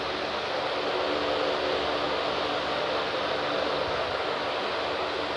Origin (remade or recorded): recorded